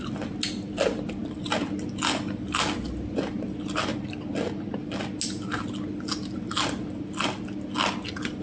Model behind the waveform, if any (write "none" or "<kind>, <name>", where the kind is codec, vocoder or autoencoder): none